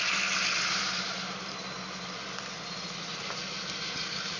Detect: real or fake real